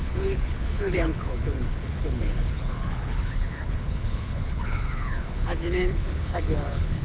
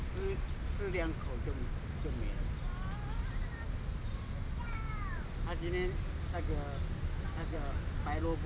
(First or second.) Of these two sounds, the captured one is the second